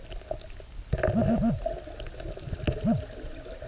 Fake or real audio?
real